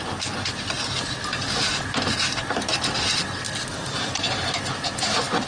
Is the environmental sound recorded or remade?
recorded